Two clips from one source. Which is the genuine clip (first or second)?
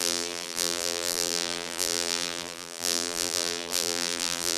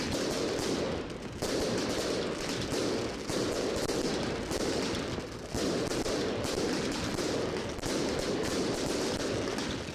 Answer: second